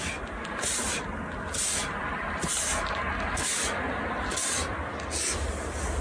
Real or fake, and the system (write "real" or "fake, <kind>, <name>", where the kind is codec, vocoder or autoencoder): real